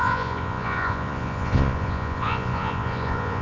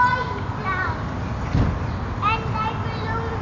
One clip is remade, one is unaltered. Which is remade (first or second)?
first